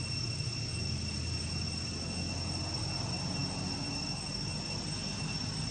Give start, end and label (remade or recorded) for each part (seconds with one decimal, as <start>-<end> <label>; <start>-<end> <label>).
0.0-5.7 recorded